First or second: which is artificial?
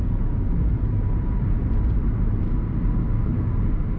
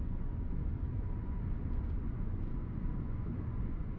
second